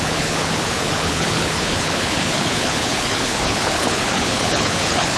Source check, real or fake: fake